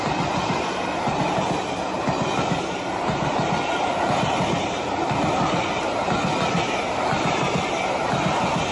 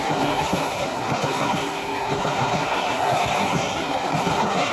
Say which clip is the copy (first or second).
second